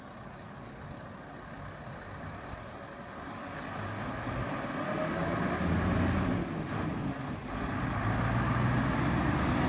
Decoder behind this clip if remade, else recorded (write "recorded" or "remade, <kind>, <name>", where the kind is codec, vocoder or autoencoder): recorded